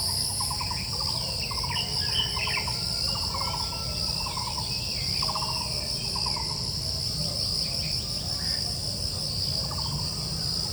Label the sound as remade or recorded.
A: recorded